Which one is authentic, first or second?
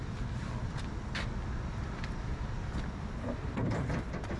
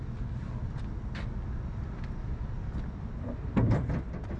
second